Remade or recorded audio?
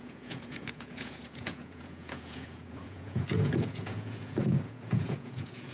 remade